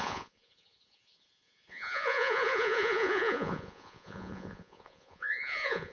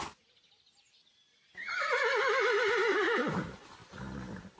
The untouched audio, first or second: second